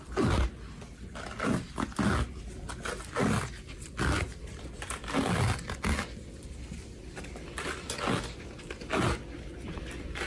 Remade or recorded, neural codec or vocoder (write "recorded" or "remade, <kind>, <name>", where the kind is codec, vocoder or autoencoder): recorded